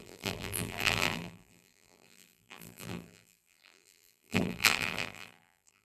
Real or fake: fake